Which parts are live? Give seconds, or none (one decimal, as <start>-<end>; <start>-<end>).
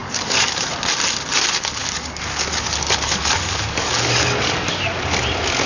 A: 0.7-1.8; 5.2-5.7